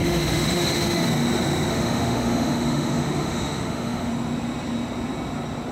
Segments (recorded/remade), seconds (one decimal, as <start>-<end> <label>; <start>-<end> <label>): 0.0-1.1 remade; 1.1-1.7 recorded; 1.7-4.1 remade; 4.1-5.7 recorded